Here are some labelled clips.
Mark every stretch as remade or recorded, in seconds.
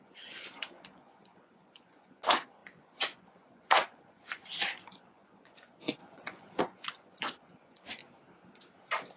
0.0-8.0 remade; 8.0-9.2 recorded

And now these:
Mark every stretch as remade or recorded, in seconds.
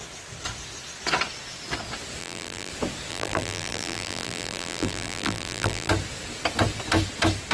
0.0-2.2 recorded; 2.2-2.7 remade; 2.7-3.1 recorded; 3.1-5.9 remade; 5.9-7.5 recorded